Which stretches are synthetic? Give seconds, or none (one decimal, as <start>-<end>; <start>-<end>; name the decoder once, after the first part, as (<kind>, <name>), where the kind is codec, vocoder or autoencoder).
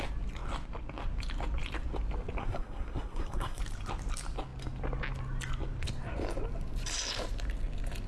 2.4-3.6 (codec, SNAC)